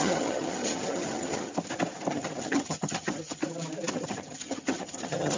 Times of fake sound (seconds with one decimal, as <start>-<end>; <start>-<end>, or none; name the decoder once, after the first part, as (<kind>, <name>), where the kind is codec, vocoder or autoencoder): 0.0-1.5 (vocoder, HiFi-GAN); 2.1-3.4; 3.9-5.4